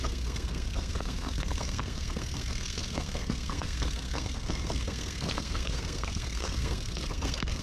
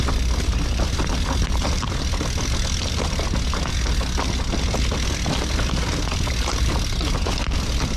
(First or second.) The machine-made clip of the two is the first